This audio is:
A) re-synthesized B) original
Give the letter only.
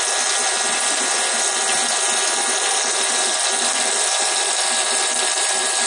B